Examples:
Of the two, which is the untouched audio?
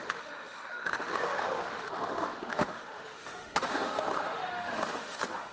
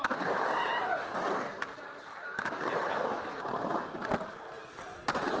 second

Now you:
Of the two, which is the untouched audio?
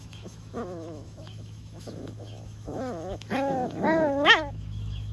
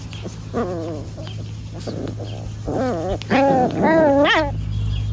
second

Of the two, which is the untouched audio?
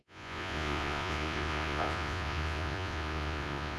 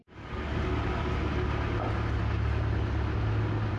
second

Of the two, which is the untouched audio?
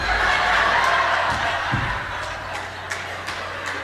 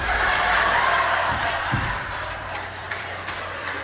first